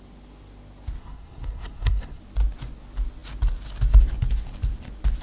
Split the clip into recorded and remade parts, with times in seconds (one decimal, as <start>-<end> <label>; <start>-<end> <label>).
0.0-1.0 recorded; 1.0-2.2 remade; 2.2-5.2 recorded